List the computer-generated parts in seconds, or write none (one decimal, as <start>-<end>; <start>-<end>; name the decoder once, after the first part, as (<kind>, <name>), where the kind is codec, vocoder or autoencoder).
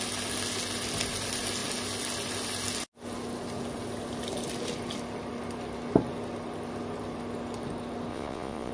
8.1-8.7 (vocoder, Vocos)